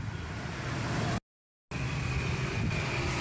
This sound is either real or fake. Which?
real